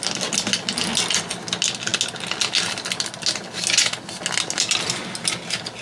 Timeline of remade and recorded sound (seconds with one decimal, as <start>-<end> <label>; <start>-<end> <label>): 0.0-5.8 recorded